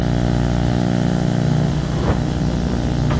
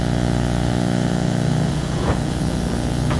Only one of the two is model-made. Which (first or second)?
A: second